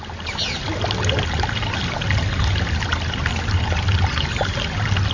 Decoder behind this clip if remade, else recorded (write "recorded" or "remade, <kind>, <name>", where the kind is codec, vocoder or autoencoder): recorded